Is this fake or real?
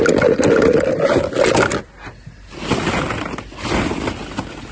real